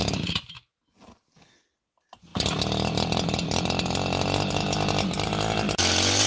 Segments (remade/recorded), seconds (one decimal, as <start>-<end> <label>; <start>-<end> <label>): 0.0-0.9 remade; 0.9-6.3 recorded

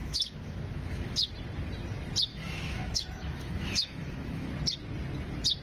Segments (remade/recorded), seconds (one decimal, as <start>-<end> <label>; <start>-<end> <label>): 0.0-1.3 remade; 1.3-2.3 recorded; 2.3-4.5 remade; 4.5-5.6 recorded

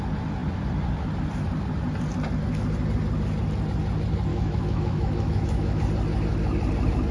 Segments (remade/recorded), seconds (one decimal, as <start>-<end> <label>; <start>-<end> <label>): 0.0-4.3 recorded; 4.3-5.8 remade; 5.8-7.1 recorded

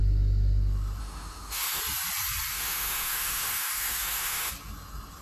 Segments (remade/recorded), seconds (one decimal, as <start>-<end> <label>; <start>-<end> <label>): 0.0-1.0 recorded; 1.0-1.8 remade; 1.8-2.5 recorded; 2.5-4.5 remade; 4.5-5.2 recorded